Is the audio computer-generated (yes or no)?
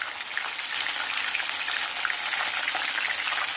yes